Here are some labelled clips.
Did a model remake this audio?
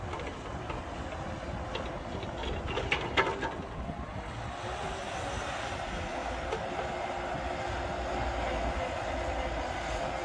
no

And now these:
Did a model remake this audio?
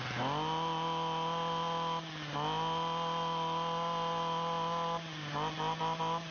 no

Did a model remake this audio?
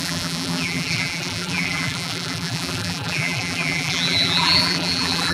yes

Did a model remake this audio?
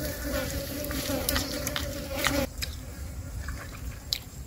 yes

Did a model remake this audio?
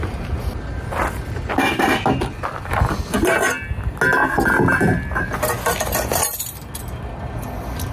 no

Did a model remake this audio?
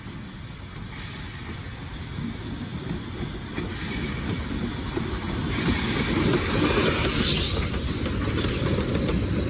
no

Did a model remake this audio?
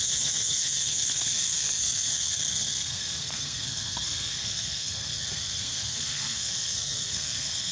yes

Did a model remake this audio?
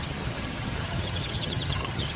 yes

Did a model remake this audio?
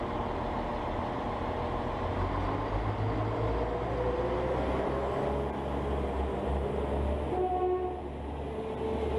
no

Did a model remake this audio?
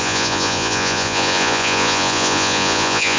yes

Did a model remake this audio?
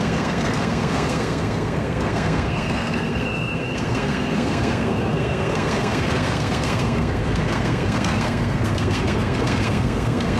yes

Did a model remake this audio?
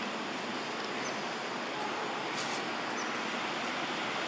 no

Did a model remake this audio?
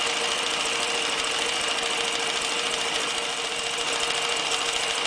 no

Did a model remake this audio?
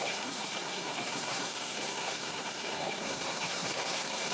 yes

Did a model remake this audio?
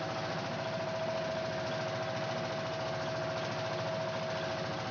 no